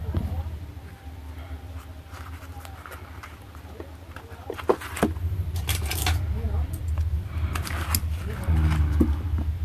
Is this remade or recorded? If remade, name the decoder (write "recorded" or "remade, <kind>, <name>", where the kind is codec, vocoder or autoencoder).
recorded